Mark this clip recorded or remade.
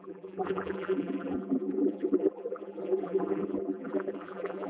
remade